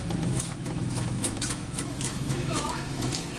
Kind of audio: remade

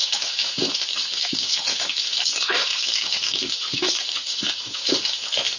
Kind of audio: remade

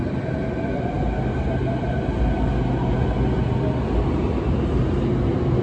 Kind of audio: recorded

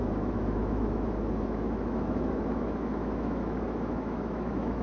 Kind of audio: remade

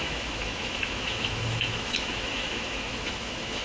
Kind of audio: remade